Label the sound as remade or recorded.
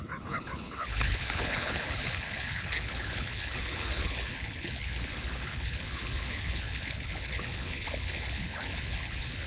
remade